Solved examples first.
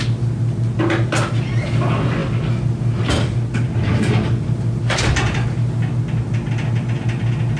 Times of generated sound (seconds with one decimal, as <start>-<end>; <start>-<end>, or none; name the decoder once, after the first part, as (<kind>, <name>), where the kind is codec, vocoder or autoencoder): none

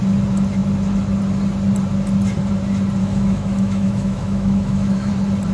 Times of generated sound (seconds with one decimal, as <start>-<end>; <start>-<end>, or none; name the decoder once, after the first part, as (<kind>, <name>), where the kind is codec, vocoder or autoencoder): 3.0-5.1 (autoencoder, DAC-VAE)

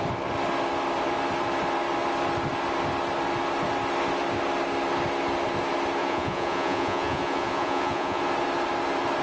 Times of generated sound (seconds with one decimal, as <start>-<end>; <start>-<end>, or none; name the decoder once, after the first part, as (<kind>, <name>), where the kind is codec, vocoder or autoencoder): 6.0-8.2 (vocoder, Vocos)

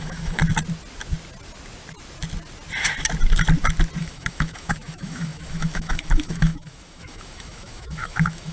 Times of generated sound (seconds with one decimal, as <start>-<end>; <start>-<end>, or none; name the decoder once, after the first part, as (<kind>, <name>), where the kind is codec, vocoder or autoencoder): 0.0-0.4 (autoencoder, DAC-VAE); 4.0-8.5